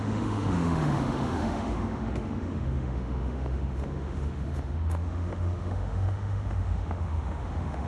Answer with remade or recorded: remade